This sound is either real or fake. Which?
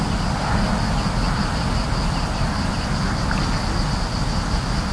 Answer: real